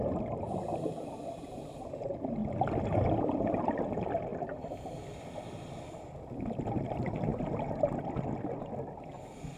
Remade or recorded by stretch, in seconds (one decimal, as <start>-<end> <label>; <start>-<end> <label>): 0.0-4.3 recorded; 4.3-5.8 remade; 5.8-7.3 recorded; 7.3-8.5 remade; 8.5-9.6 recorded